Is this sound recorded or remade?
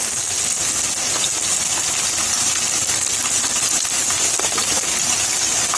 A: recorded